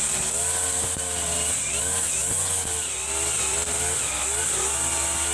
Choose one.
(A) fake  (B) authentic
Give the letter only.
B